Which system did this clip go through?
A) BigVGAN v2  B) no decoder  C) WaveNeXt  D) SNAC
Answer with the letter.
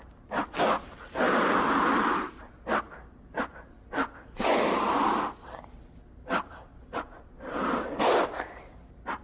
B